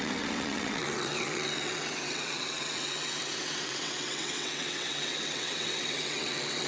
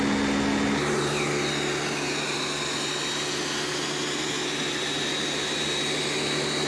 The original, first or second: second